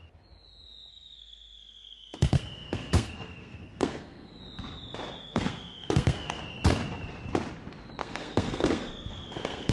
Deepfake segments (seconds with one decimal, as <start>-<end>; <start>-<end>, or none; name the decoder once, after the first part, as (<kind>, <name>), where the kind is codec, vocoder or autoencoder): 0.9-4.4 (codec, SNAC); 5.2-6.4; 8.0-9.7